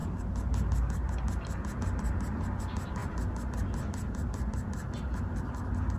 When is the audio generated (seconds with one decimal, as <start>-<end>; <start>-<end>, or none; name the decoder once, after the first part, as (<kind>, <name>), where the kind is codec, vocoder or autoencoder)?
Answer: none